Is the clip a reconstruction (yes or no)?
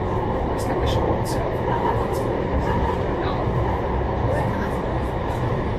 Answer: yes